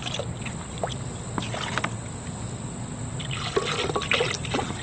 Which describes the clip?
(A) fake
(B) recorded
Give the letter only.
B